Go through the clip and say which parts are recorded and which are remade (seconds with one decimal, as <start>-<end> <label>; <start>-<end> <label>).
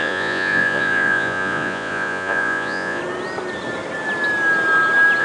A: 0.0-3.0 remade; 3.0-5.2 recorded